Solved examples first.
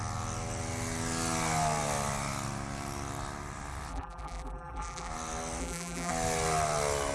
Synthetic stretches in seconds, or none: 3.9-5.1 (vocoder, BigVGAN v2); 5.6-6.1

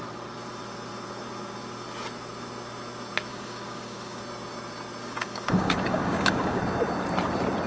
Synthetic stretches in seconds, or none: 3.3-4.2 (codec, DAC); 5.0-6.6

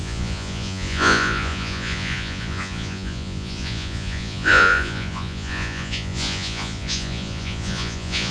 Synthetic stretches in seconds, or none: 0.0-8.3 (vocoder, Vocos)

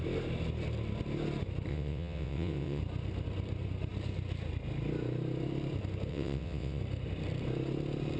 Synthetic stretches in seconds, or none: 1.7-2.8 (vocoder, WaveNeXt); 6.1-6.8